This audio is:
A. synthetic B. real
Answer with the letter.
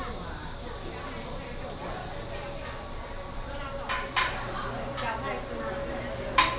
B